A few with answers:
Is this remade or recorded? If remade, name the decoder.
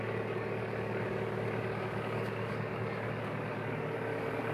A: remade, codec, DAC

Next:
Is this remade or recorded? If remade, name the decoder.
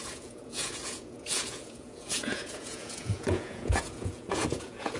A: remade, vocoder, Vocos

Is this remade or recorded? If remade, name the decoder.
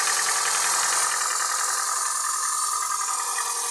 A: recorded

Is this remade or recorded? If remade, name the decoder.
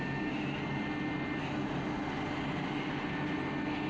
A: recorded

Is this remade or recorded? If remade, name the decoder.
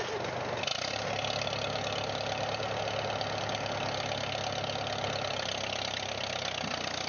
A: recorded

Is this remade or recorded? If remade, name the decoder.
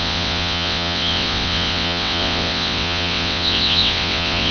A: remade, vocoder, WaveNeXt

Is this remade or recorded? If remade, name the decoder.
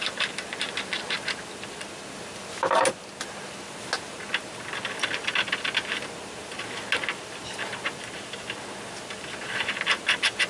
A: recorded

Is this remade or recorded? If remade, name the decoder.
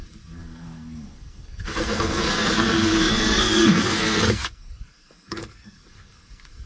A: remade, codec, SNAC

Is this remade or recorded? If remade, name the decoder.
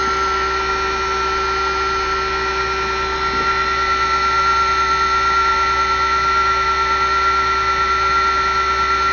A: recorded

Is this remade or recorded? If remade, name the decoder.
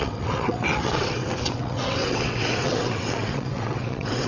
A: remade, vocoder, WaveNeXt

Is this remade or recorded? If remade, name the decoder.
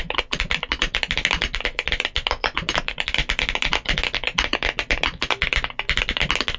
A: recorded